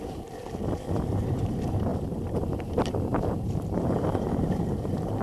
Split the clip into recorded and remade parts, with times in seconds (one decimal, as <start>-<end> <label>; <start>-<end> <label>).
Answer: 0.0-0.4 remade; 0.4-1.1 recorded; 1.1-5.2 remade

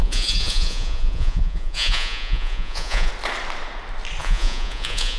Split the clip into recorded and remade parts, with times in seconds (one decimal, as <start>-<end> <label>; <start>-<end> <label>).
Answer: 0.0-3.1 remade; 3.1-4.2 recorded; 4.2-5.2 remade